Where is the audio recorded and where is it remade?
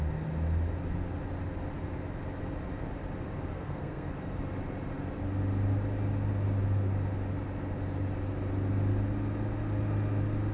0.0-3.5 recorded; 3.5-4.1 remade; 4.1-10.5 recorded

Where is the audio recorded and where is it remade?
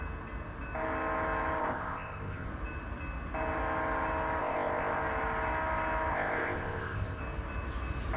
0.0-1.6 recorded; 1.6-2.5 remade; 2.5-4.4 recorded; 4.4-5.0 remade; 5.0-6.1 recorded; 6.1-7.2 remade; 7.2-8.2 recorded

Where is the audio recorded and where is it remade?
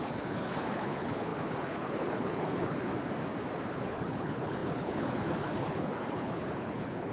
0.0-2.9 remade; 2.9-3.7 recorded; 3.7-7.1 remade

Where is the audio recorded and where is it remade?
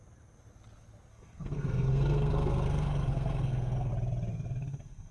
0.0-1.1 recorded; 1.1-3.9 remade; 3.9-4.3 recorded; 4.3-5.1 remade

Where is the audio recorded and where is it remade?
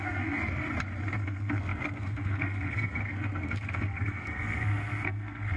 0.0-0.4 remade; 0.4-1.1 recorded; 1.1-5.6 remade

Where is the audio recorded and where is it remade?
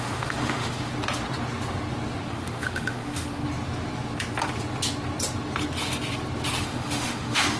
0.0-0.9 remade; 0.9-2.3 recorded; 2.3-3.4 remade; 3.4-6.6 recorded; 6.6-7.6 remade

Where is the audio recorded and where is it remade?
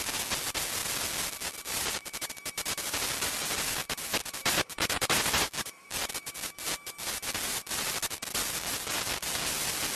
0.0-10.0 recorded